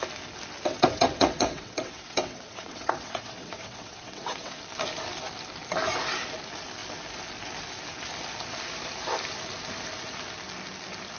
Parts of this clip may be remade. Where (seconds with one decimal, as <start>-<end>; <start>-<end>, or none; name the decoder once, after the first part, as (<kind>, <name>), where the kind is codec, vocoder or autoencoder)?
0.7-4.6 (vocoder, WaveNeXt)